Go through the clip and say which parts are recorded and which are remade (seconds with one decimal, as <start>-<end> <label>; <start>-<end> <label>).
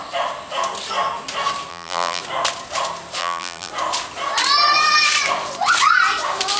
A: 0.0-1.7 recorded; 1.7-2.2 remade; 2.2-3.2 recorded; 3.2-3.7 remade; 3.7-6.6 recorded